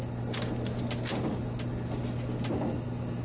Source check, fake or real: real